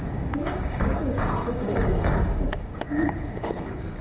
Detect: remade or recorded remade